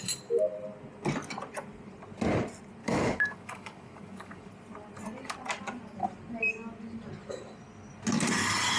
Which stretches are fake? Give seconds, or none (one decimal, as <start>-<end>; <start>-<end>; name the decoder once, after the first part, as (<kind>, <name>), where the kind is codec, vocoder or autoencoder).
2.8-4.5 (codec, DAC)